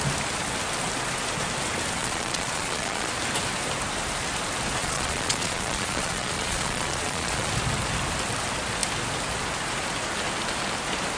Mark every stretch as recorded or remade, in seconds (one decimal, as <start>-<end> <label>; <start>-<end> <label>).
0.0-2.0 recorded; 2.0-3.1 remade; 3.1-4.8 recorded; 4.8-7.5 remade; 7.5-11.2 recorded